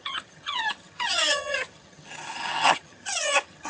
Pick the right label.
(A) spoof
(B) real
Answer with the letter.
A